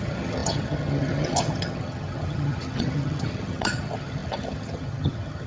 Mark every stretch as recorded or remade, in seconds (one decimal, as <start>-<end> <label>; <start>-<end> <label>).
0.0-5.5 remade